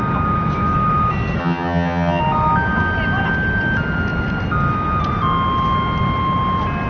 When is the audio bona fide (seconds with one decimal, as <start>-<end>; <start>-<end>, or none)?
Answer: 0.0-1.4; 2.2-6.9